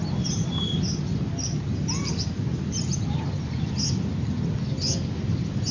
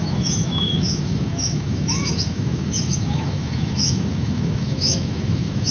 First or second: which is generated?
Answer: second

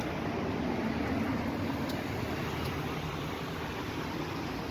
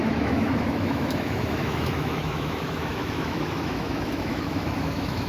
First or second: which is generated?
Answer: second